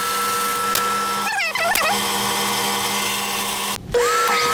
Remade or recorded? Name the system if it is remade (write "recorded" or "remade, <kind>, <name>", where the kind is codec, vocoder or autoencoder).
recorded